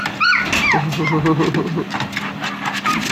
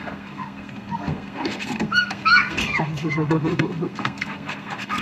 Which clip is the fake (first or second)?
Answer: second